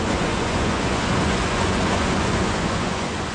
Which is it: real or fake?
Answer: fake